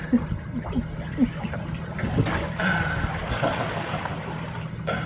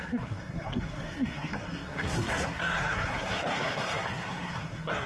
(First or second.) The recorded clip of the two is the first